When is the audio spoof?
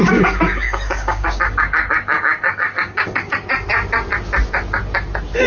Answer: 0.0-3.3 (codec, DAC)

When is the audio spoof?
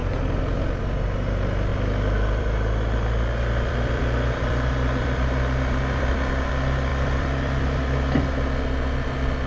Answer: 1.7-6.5 (vocoder, BigVGAN v2); 6.9-8.2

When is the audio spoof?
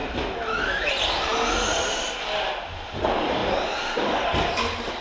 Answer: 0.0-0.9 (autoencoder, DAC-VAE)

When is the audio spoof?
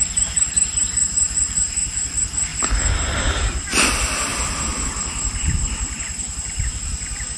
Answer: 4.3-6.8 (vocoder, BigVGAN v2)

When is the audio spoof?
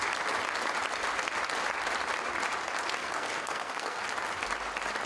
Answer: 3.0-4.0 (codec, SNAC)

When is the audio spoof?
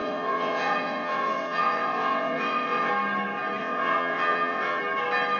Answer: 0.0-2.9 (vocoder, WaveNeXt); 3.6-4.8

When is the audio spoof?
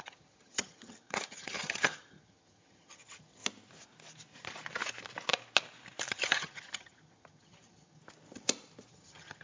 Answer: 0.0-3.4 (vocoder, HiFi-GAN); 6.1-8.0; 8.9-9.4